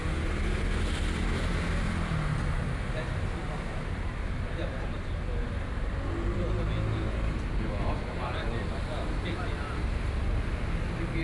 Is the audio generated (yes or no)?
no